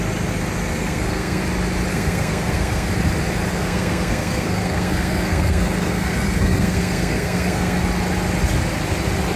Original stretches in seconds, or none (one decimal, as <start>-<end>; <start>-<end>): 0.0-0.8; 1.4-1.9; 2.9-3.5; 7.8-9.4